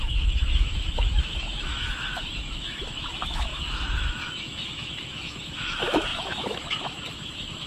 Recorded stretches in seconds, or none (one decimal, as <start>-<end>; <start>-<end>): none